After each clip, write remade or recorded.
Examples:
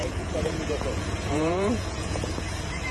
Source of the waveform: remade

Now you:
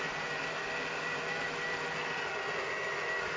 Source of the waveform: recorded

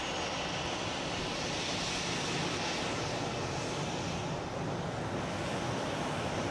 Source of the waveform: recorded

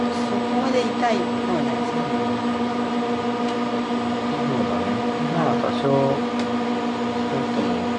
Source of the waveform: recorded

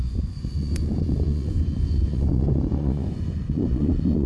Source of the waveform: remade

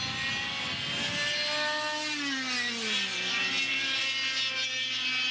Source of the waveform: recorded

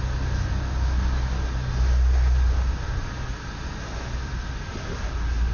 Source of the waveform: recorded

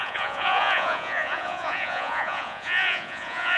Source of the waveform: remade